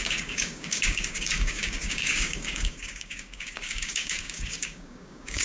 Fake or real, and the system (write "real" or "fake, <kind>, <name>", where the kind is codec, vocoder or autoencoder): fake, codec, DAC